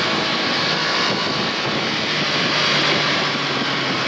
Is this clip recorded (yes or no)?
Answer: yes